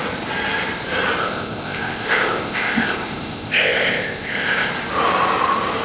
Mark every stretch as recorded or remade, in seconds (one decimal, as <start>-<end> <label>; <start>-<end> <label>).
0.0-1.2 recorded; 1.2-4.7 remade; 4.7-5.8 recorded